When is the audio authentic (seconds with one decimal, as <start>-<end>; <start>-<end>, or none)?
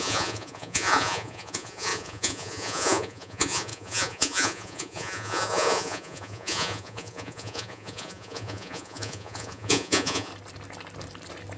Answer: 10.3-11.6